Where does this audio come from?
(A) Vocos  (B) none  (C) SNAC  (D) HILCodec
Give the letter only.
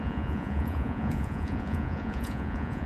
A